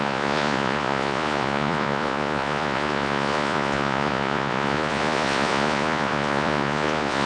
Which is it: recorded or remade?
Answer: remade